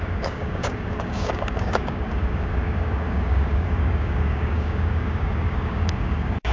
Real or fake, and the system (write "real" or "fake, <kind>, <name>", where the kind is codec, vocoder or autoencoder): fake, codec, DAC